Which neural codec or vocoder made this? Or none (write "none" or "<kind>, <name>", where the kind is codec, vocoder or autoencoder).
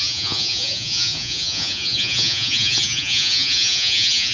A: vocoder, Vocos